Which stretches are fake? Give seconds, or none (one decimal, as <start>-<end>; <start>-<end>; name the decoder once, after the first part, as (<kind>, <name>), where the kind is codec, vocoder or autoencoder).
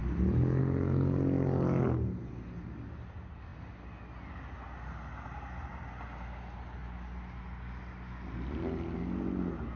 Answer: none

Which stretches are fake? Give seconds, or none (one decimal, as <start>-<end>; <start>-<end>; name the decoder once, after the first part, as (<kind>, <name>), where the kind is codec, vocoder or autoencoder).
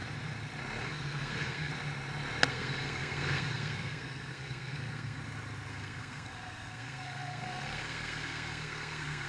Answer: 0.8-1.7 (codec, SNAC); 2.5-5.2; 5.7-9.3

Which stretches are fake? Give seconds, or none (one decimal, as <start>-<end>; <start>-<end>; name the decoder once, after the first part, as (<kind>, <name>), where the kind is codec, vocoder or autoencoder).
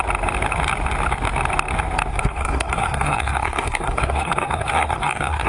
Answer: 2.1-5.5 (codec, SNAC)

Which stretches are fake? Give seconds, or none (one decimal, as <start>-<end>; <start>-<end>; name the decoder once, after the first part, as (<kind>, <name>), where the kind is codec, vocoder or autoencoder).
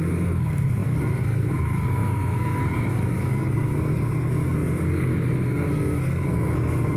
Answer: 0.0-7.0 (codec, SNAC)